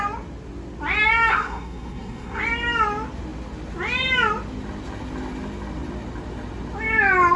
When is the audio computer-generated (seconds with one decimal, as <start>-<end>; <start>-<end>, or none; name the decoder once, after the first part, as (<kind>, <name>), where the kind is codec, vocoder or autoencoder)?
1.3-2.4 (codec, SNAC)